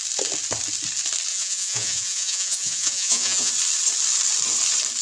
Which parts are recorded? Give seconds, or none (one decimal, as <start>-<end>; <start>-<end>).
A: 0.0-1.3; 3.5-5.0